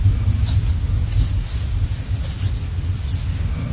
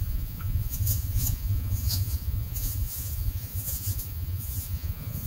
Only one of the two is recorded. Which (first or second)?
first